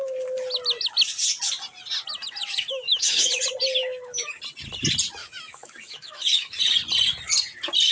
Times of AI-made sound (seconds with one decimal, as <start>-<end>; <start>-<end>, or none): 2.4-3.3; 3.8-4.4; 5.2-6.6